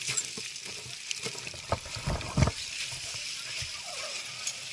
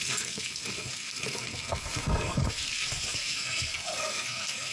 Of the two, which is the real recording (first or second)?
first